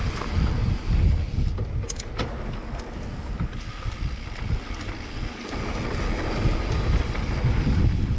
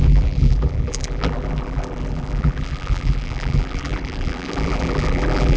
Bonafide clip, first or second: first